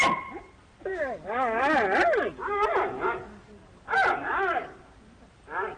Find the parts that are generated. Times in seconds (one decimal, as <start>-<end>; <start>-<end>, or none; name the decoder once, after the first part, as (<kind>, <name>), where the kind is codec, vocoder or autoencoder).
none